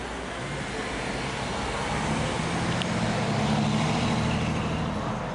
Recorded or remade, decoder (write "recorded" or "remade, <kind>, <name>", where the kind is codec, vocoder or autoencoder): recorded